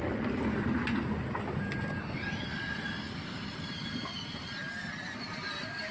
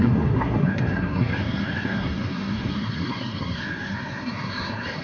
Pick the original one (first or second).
first